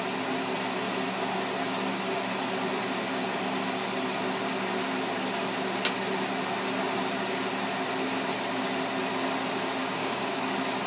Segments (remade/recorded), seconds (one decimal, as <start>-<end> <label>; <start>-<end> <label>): 0.0-9.8 recorded; 9.8-10.3 remade; 10.3-10.9 recorded